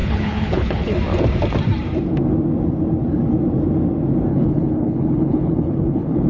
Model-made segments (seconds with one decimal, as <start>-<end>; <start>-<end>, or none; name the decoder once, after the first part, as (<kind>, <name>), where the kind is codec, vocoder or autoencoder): 0.0-0.9 (codec, HILCodec); 4.3-6.3